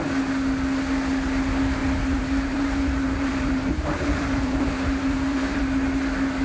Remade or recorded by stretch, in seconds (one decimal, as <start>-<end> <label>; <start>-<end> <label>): 0.0-1.8 recorded; 1.8-5.6 remade; 5.6-6.4 recorded

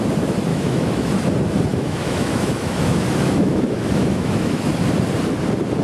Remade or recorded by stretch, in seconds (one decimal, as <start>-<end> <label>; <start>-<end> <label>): 0.0-0.5 recorded; 0.5-1.1 remade; 1.1-1.7 recorded; 1.7-4.7 remade; 4.7-5.8 recorded

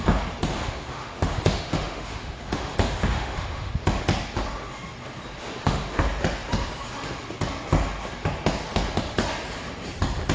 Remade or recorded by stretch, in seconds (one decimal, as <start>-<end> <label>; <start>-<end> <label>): 0.0-0.5 recorded; 0.5-3.7 remade; 3.7-5.4 recorded; 5.4-6.0 remade; 6.0-10.3 recorded

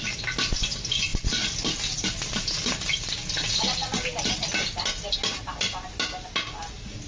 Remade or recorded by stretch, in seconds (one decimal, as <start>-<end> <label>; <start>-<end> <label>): 0.0-7.1 recorded

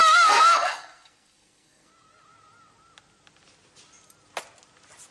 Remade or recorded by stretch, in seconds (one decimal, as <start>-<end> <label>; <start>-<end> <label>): 0.0-1.9 remade; 1.9-5.1 recorded